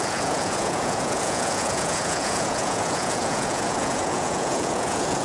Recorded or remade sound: remade